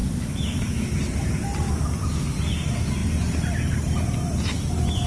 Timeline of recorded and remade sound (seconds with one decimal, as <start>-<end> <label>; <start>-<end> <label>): 0.0-0.9 remade; 0.9-5.1 recorded